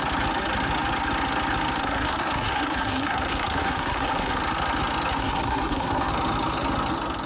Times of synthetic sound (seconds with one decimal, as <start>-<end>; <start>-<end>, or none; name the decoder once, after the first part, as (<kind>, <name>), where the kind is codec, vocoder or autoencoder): 1.8-4.4 (codec, SNAC); 5.2-6.1